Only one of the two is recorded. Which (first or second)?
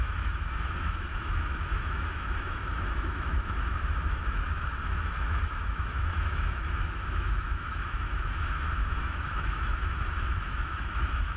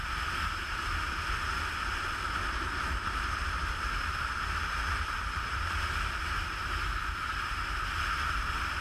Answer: second